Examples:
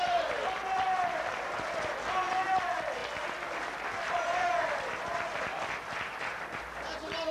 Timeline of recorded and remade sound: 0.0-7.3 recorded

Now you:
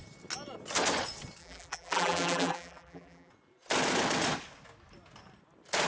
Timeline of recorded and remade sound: 0.0-1.4 recorded; 1.4-3.3 remade; 3.3-5.9 recorded

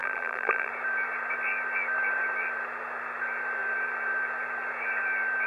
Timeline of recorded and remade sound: 0.0-0.7 remade; 0.7-5.5 recorded

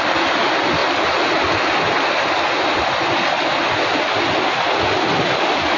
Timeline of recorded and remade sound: 0.0-0.8 remade; 0.8-3.0 recorded; 3.0-5.8 remade

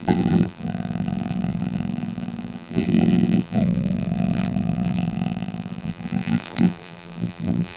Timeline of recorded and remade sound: 0.0-7.8 remade

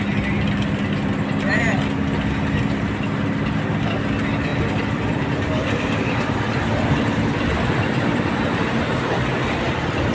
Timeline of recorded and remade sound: 0.0-4.5 recorded; 4.5-8.3 remade; 8.3-10.1 recorded